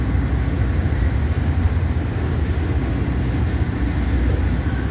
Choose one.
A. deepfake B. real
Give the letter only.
B